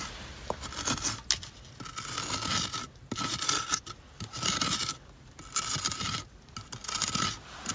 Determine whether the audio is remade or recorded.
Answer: recorded